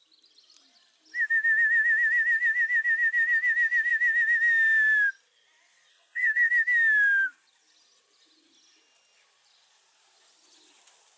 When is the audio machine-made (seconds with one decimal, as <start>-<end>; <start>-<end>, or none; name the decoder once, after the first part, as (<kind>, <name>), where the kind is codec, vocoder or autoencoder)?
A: 5.9-6.5 (codec, SNAC)